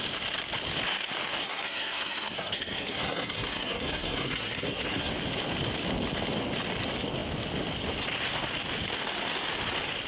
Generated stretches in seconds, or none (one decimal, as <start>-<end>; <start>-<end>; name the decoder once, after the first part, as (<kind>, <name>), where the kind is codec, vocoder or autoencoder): 1.4-5.1 (codec, SNAC)